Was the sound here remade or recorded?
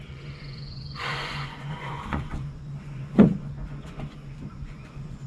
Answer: remade